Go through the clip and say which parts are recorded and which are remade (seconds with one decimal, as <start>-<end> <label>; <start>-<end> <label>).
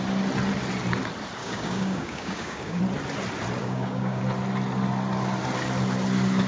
0.0-1.4 recorded; 1.4-2.8 remade; 2.8-3.6 recorded; 3.6-4.2 remade; 4.2-6.5 recorded